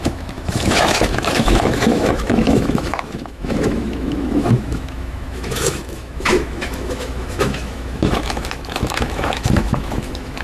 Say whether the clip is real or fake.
fake